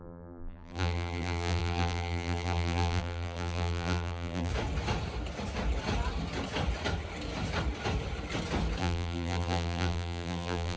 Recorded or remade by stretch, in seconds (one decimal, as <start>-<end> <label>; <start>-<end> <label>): 0.0-4.5 remade; 4.5-8.8 recorded; 8.8-10.8 remade